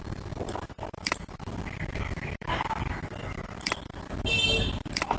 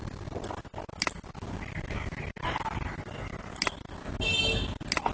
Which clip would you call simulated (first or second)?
first